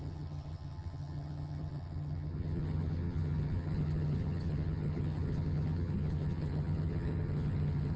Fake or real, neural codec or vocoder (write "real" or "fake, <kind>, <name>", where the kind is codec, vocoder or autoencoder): fake, vocoder, HiFi-GAN